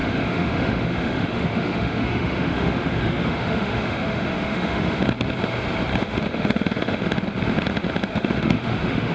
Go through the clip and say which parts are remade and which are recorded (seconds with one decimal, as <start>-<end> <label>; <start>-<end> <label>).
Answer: 0.0-5.0 remade; 5.0-5.9 recorded; 5.9-7.0 remade; 7.0-8.1 recorded; 8.1-9.1 remade